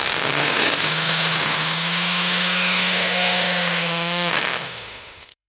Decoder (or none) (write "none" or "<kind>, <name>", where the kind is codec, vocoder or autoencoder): autoencoder, DAC-VAE